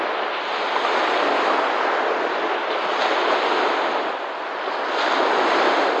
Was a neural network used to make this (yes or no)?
no